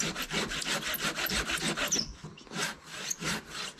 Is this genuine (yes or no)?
yes